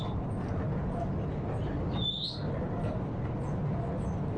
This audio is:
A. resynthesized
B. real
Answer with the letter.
B